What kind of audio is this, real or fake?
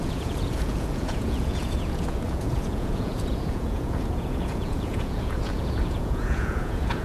fake